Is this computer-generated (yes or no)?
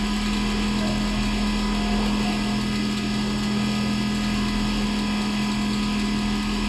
no